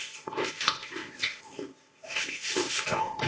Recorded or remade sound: remade